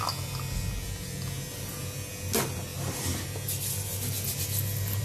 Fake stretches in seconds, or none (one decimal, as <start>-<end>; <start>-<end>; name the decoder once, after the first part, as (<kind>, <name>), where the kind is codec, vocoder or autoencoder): none